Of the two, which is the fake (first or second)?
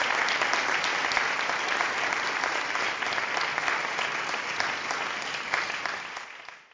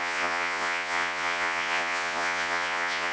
second